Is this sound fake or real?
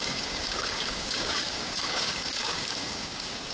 fake